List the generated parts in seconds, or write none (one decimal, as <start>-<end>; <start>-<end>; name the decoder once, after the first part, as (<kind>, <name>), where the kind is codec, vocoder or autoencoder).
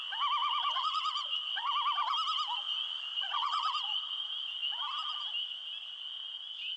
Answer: 0.4-1.7 (vocoder, Vocos); 3.1-4.1